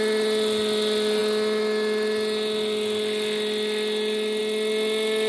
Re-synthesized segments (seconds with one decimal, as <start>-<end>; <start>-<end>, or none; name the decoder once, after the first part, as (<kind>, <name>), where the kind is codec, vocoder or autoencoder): none